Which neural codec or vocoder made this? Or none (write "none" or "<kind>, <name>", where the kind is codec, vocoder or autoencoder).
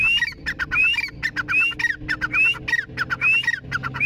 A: none